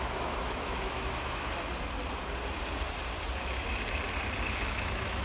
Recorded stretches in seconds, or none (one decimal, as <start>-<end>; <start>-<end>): 1.5-4.6